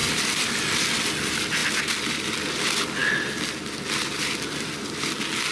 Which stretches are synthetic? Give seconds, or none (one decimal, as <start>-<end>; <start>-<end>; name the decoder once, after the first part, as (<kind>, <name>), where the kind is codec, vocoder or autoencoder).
none